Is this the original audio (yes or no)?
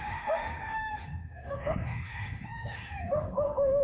no